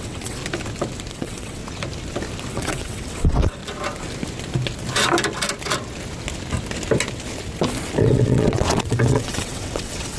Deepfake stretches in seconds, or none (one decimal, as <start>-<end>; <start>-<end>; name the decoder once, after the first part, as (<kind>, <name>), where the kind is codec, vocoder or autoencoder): 0.0-0.4 (vocoder, WaveNeXt); 1.1-1.6; 2.5-3.6; 8.0-10.2